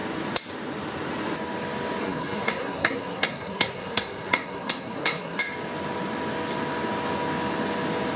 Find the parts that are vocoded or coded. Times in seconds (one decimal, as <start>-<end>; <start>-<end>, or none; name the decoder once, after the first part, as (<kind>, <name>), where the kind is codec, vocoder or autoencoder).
2.0-5.4 (codec, SNAC)